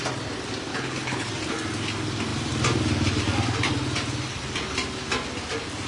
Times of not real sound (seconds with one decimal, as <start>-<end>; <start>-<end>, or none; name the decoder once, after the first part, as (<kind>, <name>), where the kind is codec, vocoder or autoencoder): 0.7-1.3 (codec, HILCodec)